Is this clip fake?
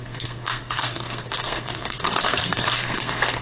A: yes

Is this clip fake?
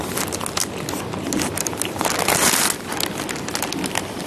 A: no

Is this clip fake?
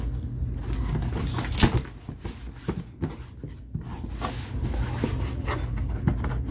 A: no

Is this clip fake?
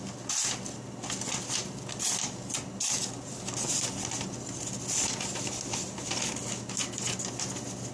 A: no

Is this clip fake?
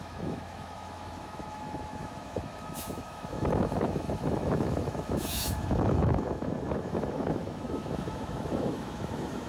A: yes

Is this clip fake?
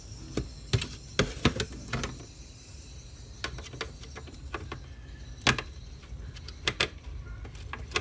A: no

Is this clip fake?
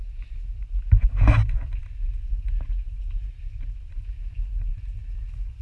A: no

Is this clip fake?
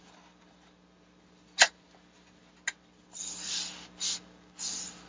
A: no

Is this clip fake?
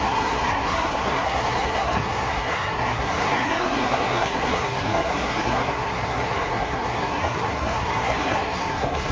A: yes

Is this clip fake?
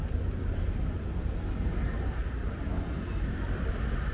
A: no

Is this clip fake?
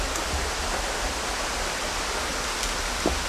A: no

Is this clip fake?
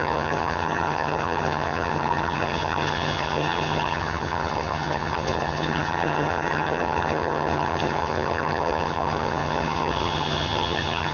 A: yes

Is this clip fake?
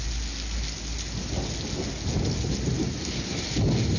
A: no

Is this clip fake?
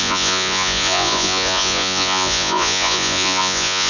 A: yes